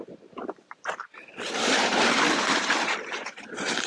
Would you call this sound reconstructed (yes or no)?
yes